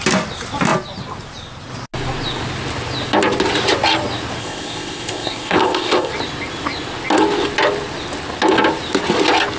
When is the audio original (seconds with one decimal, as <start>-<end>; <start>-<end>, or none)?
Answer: 0.0-4.4; 6.1-9.6